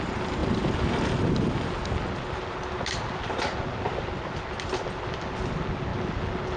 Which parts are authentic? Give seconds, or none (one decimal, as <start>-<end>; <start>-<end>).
0.0-6.6